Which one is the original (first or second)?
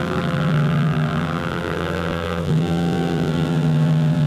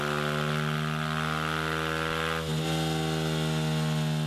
second